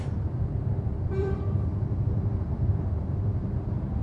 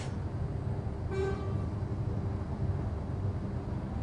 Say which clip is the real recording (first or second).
second